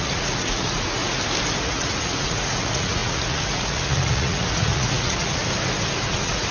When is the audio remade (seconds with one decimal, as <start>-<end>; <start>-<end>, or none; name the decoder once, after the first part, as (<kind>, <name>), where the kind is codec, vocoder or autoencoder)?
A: 0.0-1.0 (vocoder, Vocos); 1.6-5.4; 6.0-6.5